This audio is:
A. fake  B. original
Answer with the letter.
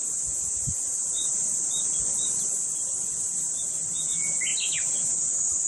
B